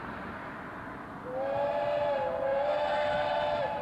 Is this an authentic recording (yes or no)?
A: yes